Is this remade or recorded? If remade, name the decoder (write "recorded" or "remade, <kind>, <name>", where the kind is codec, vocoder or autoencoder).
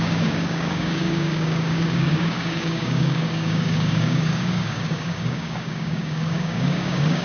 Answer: remade, codec, DAC